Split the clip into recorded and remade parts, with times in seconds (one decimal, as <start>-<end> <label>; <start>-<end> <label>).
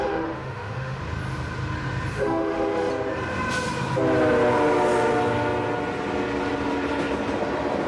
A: 0.0-1.0 remade; 1.0-2.1 recorded; 2.1-2.9 remade; 2.9-7.9 recorded